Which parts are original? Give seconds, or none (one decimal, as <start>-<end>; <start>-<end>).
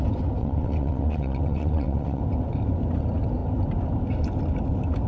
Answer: 0.0-0.4; 2.2-5.1